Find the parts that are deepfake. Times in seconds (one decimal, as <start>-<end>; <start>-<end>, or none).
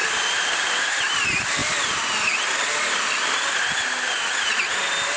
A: none